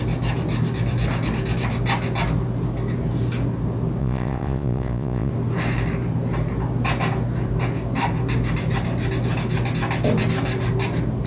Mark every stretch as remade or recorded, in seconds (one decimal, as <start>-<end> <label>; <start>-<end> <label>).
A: 0.0-4.0 recorded; 4.0-5.3 remade; 5.3-11.3 recorded